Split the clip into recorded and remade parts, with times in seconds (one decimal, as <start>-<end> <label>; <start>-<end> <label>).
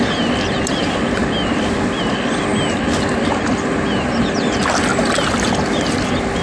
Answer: 0.0-6.4 recorded